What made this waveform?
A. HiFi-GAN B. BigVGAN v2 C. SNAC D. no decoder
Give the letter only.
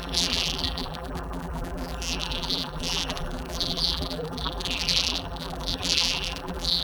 B